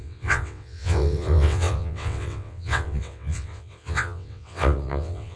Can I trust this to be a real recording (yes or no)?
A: no